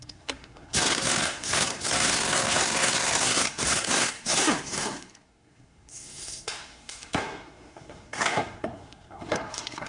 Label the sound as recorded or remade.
remade